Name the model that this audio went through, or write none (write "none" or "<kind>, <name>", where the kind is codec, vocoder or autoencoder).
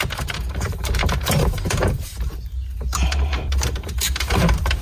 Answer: vocoder, BigVGAN v2